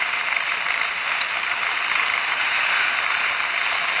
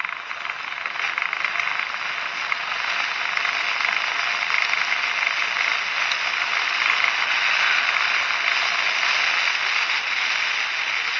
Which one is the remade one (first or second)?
first